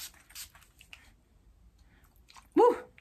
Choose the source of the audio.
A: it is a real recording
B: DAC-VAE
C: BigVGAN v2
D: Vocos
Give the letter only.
A